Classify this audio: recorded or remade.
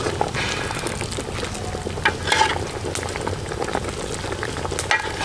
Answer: recorded